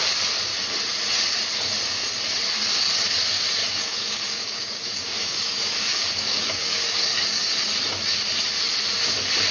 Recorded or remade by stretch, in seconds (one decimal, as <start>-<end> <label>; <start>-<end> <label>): 0.0-3.6 recorded; 3.6-7.6 remade; 7.6-9.5 recorded